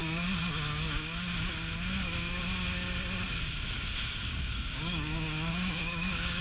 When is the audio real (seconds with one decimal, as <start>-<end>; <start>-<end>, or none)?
0.0-3.8